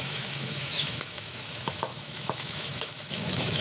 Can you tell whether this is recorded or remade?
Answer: remade